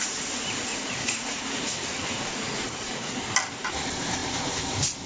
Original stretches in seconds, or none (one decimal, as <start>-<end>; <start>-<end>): 0.0-0.7; 3.2-5.1